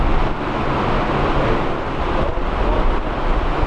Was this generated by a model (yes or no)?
no